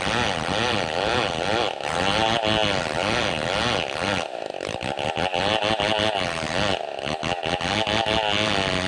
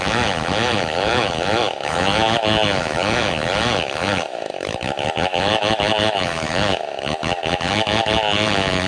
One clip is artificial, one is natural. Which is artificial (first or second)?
second